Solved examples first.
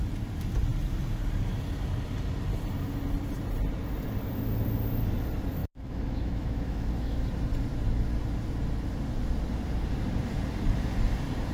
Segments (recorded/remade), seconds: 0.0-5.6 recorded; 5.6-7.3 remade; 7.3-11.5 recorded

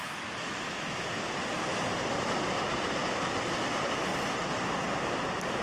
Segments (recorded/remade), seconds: 0.0-1.3 remade; 1.3-5.6 recorded

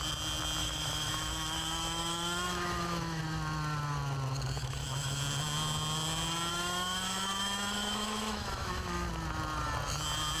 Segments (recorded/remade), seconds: 0.0-0.6 recorded; 0.6-3.2 remade; 3.2-4.6 recorded; 4.6-5.2 remade; 5.2-6.5 recorded; 6.5-9.1 remade; 9.1-10.4 recorded

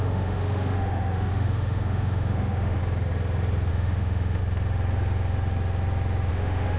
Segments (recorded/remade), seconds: 0.0-2.8 remade; 2.8-3.7 recorded; 3.7-4.4 remade; 4.4-6.3 recorded; 6.3-6.8 remade